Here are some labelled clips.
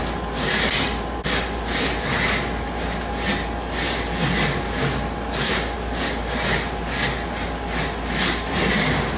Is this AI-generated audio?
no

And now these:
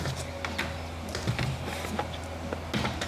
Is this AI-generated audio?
no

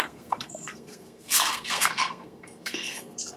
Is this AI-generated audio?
yes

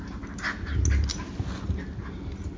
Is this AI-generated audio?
no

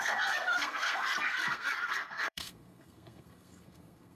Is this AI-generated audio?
yes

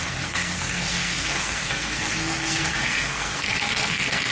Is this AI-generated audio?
yes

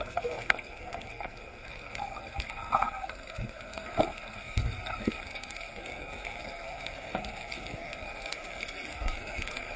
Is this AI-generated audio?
yes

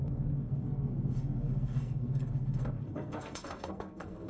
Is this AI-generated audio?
yes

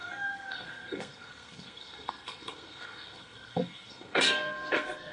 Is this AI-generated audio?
yes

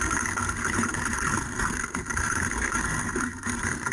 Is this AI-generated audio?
yes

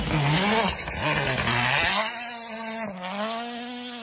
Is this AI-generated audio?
no